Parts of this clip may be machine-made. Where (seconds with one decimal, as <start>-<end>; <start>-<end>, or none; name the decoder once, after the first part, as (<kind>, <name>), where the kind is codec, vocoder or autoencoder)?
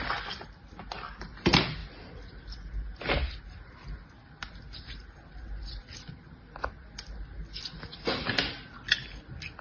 none